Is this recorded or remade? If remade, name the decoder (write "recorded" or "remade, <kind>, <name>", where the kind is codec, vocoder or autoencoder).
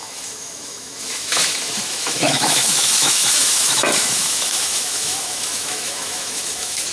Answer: remade, autoencoder, DAC-VAE